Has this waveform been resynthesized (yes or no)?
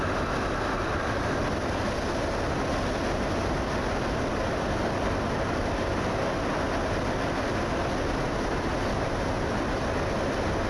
no